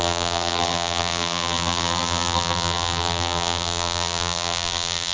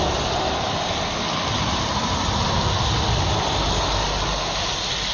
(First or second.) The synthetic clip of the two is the first